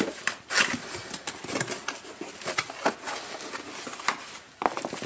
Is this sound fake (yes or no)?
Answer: no